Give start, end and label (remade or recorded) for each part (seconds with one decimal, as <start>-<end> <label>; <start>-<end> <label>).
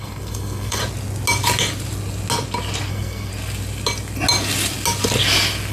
0.0-0.8 remade; 0.8-2.9 recorded; 2.9-3.3 remade; 3.3-5.7 recorded